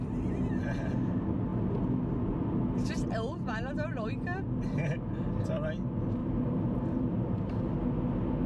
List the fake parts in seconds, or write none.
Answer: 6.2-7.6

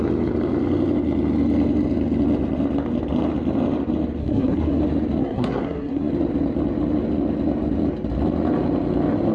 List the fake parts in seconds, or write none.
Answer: 4.2-4.8; 5.2-6.1

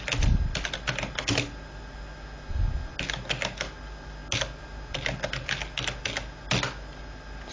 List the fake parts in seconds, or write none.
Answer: none

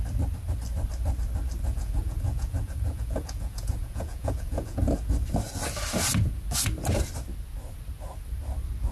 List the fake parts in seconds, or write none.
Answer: 1.7-4.8

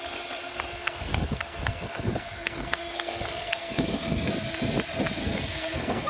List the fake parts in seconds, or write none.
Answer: 0.8-4.3; 5.2-6.1

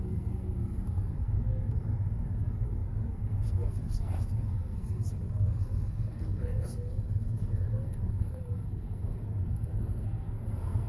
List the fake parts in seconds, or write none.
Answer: 0.0-10.9

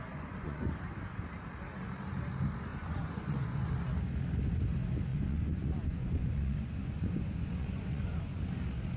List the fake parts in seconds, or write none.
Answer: 0.0-0.7; 2.7-3.7; 5.1-8.4

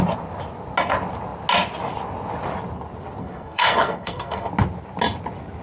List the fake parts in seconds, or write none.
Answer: 3.2-4.5